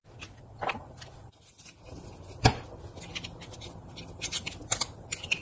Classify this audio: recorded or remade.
recorded